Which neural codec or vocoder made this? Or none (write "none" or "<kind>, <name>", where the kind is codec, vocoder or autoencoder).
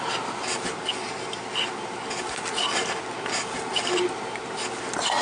none